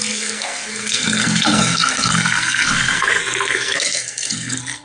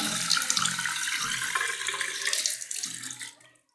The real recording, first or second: second